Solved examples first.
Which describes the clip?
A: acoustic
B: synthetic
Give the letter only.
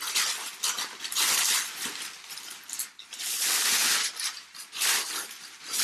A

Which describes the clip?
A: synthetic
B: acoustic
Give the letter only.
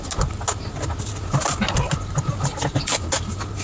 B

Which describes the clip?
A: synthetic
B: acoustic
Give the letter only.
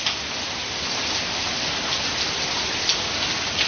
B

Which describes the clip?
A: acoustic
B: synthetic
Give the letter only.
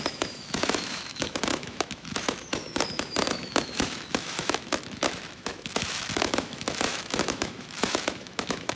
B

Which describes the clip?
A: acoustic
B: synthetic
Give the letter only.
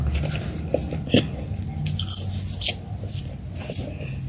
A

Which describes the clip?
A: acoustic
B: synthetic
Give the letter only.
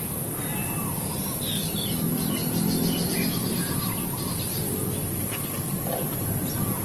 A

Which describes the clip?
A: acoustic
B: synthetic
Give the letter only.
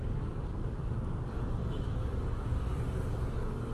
B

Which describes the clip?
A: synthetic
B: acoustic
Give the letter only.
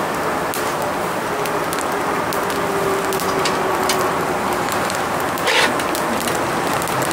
B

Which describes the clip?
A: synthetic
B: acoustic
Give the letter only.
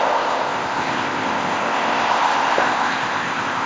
A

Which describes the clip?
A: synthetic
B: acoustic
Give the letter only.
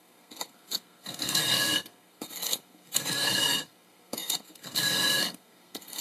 A